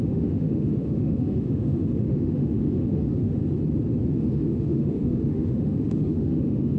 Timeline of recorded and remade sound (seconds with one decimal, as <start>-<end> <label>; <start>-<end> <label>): 0.0-3.4 remade; 3.4-4.1 recorded; 4.1-6.8 remade